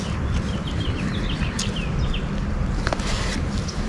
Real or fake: real